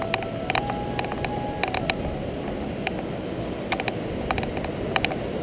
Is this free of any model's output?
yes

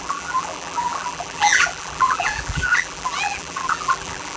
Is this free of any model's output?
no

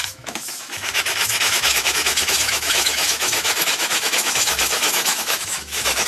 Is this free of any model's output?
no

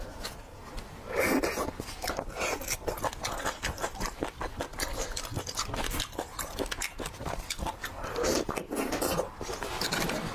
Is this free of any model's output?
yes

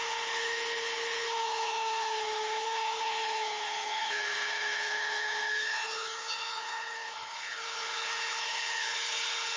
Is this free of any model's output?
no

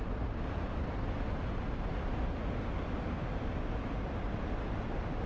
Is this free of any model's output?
yes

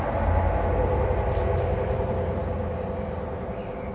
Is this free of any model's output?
yes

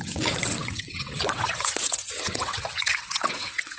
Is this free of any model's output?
no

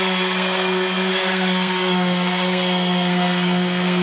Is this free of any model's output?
no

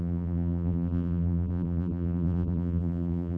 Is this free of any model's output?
no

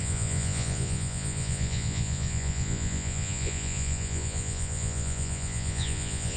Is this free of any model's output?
no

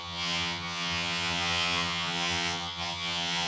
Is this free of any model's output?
no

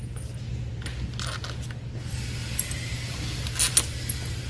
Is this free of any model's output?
yes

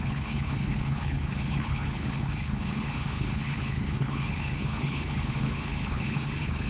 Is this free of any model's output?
no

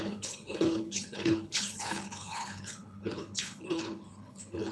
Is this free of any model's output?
no